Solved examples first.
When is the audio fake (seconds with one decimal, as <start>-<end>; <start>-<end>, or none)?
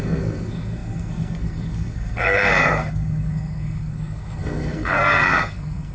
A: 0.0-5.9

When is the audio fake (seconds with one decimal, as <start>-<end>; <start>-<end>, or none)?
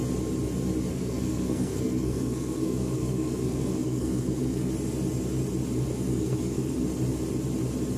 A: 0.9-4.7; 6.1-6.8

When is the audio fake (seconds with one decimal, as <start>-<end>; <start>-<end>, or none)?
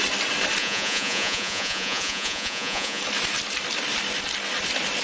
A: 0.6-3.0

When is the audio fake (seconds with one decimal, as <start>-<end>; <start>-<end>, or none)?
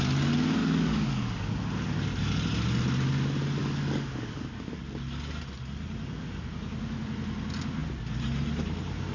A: 0.6-1.5; 3.6-4.8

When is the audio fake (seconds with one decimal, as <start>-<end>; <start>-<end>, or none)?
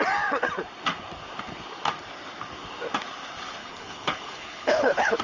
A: 3.6-5.2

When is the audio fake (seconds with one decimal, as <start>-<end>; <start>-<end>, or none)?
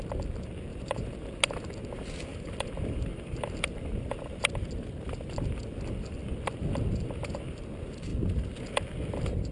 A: 0.7-1.2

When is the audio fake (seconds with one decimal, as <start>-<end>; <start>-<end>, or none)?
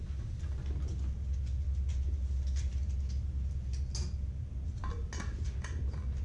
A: none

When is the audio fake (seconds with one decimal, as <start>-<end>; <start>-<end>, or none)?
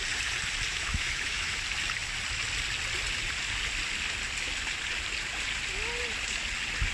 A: 0.7-1.6